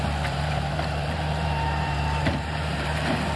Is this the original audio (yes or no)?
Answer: no